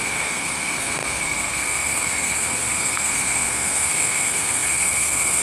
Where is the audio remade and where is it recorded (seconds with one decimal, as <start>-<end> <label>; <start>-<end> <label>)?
0.0-5.4 remade